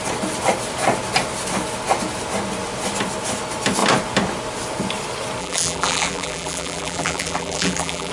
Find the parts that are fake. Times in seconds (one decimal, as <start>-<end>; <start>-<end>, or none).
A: 5.4-8.1